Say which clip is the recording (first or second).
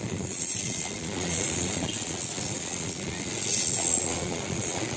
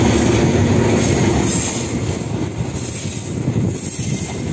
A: second